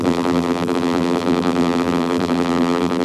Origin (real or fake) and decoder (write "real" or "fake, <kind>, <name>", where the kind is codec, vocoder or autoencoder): fake, vocoder, BigVGAN v2